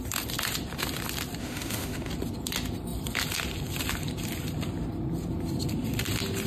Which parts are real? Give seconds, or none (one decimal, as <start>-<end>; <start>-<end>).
0.0-1.4; 2.1-6.5